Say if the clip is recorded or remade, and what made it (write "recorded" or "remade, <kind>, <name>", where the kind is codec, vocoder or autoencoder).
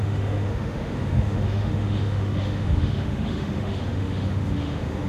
remade, autoencoder, DAC-VAE